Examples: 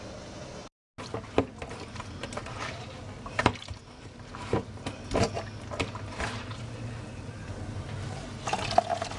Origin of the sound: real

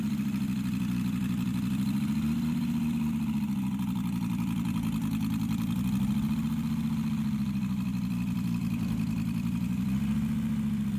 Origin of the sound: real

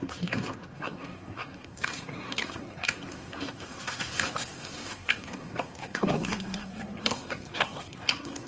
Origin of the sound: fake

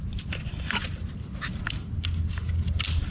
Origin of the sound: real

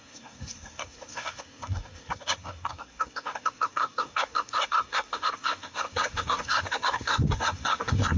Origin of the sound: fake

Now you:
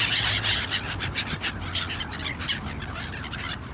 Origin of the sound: real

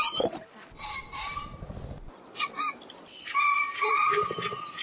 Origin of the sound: real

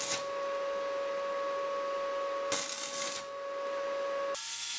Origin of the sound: real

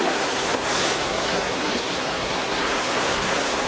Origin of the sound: fake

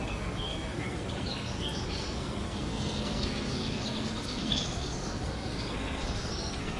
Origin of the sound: fake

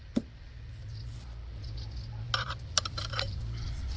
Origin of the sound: real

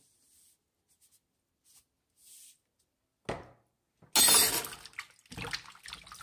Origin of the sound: real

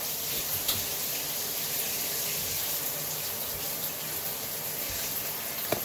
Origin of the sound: real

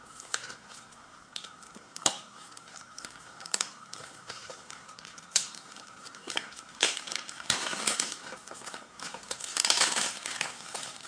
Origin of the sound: fake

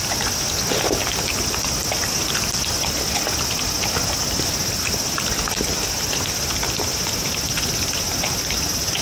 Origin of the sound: real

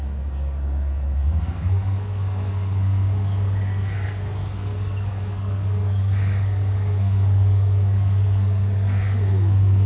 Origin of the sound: fake